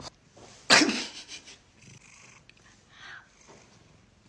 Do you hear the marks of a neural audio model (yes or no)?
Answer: no